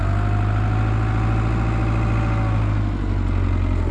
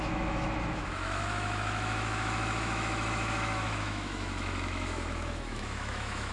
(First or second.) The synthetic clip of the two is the second